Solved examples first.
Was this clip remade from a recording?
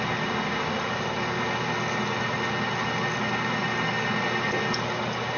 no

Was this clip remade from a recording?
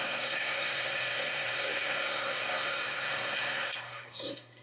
yes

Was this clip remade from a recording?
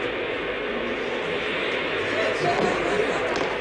no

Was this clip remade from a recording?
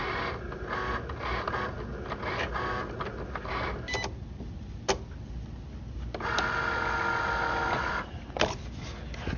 no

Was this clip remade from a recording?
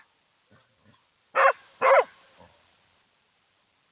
no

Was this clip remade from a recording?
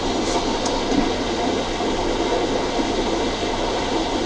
no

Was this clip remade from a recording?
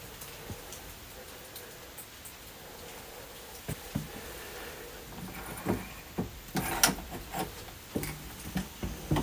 no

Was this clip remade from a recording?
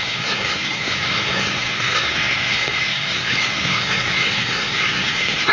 yes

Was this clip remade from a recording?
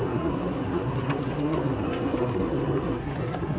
yes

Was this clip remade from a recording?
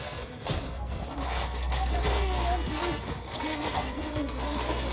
yes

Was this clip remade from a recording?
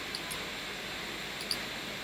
no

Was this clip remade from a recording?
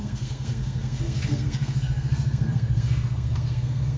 yes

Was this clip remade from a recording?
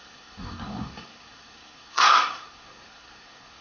yes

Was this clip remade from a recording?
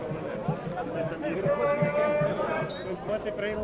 no